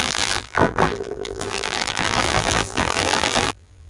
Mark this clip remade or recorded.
remade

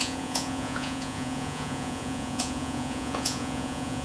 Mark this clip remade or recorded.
remade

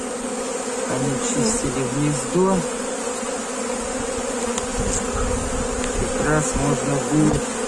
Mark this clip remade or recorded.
recorded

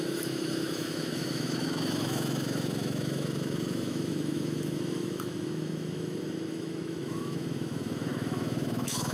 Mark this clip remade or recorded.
remade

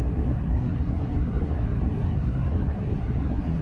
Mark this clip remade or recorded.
remade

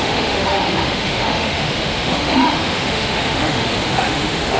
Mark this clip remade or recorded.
remade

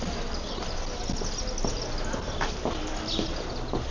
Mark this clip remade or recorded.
recorded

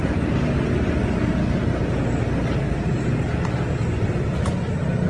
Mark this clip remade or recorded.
recorded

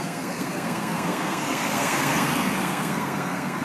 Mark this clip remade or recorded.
remade